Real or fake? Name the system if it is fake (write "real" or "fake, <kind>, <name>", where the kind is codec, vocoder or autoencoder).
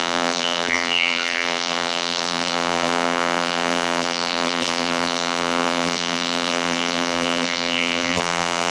fake, vocoder, BigVGAN v2